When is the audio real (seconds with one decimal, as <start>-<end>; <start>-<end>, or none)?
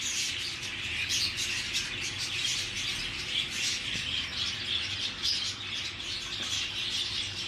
0.0-7.5